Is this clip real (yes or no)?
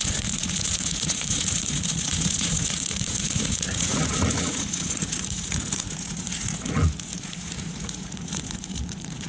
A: no